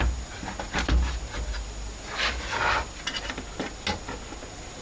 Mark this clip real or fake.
real